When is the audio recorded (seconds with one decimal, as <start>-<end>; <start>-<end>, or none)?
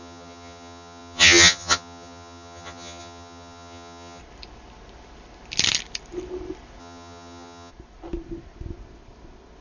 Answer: 4.2-6.8; 7.7-9.6